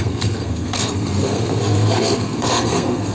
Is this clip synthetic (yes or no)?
yes